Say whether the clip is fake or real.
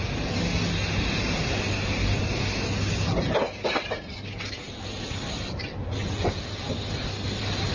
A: real